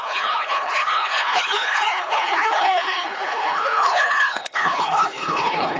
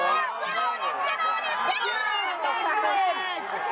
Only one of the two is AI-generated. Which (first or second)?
first